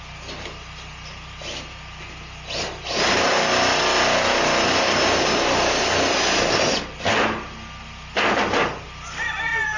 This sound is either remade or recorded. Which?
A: recorded